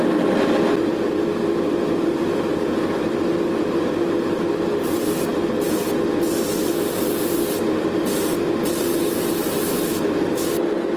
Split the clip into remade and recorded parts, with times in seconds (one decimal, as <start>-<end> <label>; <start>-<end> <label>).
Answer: 0.0-11.0 recorded